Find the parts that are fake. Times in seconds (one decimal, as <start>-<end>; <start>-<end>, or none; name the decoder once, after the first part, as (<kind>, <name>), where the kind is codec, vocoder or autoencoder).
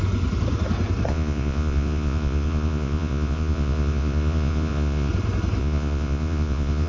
1.1-5.1 (vocoder, Vocos); 5.6-6.9